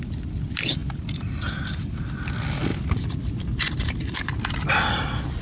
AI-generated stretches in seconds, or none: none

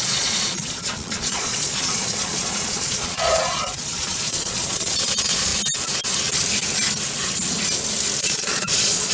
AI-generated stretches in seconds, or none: 0.0-5.5 (vocoder, Vocos); 8.2-9.1

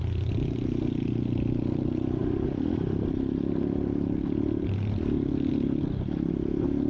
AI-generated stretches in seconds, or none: none